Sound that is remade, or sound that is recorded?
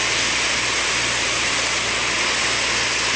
recorded